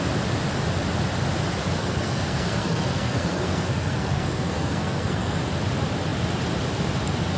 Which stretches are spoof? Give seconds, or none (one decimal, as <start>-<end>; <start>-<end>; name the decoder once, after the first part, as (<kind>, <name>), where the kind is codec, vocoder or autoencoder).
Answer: 1.8-5.4 (codec, SNAC)